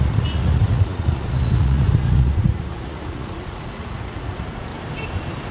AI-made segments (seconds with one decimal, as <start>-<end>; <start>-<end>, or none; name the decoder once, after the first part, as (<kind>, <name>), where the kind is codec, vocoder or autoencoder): 0.0-4.7 (vocoder, Vocos)